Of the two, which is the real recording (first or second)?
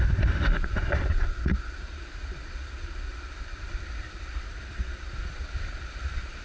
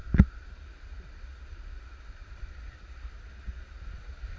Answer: second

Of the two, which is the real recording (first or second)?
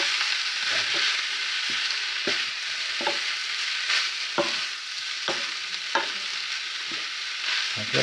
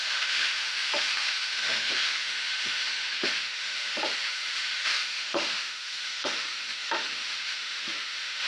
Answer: first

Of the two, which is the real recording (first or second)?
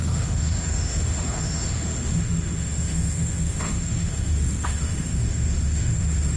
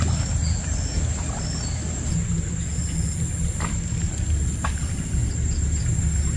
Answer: second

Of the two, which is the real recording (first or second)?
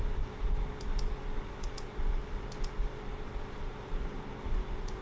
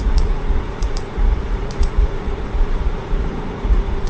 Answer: first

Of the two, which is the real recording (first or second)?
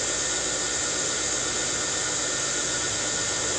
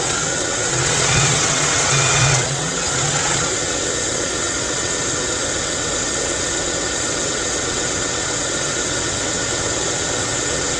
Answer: first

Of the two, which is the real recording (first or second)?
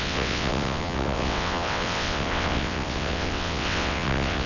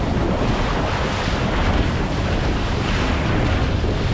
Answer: second